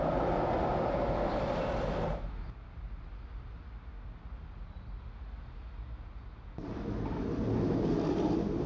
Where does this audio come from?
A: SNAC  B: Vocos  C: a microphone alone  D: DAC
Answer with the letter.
C